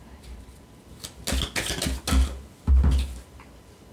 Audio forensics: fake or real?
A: real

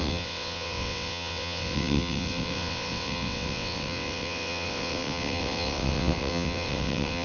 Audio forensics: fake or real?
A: fake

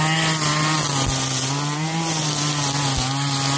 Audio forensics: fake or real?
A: real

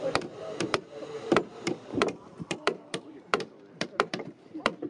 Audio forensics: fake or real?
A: fake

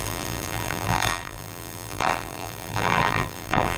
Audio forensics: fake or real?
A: fake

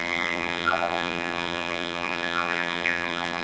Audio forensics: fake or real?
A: fake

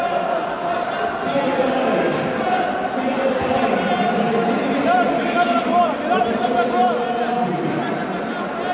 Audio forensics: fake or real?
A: real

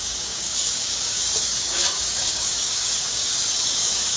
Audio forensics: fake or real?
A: fake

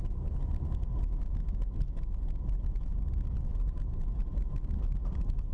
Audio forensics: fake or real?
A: real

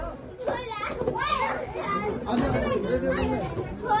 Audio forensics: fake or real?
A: real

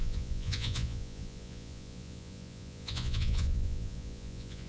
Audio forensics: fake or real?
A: fake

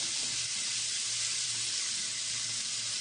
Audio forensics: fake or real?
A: real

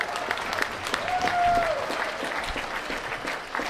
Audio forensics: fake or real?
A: real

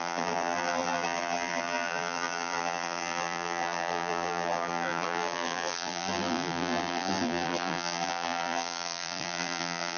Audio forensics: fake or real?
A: fake